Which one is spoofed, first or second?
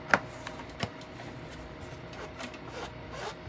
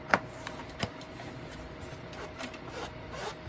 second